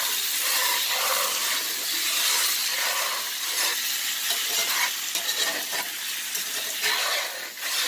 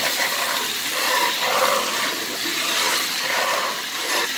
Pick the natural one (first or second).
first